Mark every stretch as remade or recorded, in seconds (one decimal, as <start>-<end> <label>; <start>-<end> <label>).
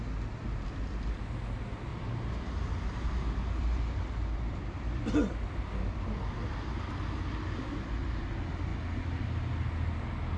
0.0-1.9 recorded; 1.9-6.8 remade; 6.8-10.4 recorded